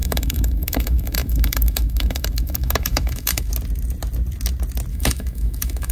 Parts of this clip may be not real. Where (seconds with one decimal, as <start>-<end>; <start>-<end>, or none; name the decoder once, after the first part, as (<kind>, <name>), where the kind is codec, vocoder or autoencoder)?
0.0-3.5 (autoencoder, DAC-VAE); 4.9-5.9